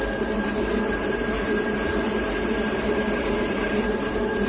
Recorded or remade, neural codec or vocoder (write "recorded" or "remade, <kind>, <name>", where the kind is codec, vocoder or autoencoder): recorded